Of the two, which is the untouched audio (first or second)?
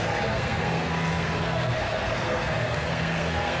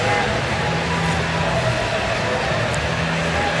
second